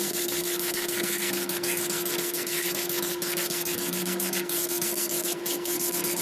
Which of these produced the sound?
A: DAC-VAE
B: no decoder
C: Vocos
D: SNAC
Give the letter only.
D